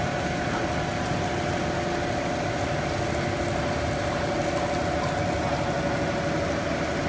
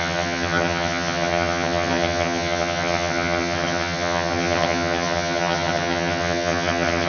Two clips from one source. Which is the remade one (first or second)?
second